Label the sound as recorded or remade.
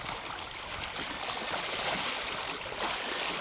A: recorded